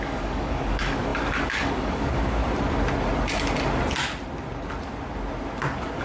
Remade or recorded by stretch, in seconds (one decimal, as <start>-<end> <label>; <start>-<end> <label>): 0.0-2.4 remade; 2.4-6.0 recorded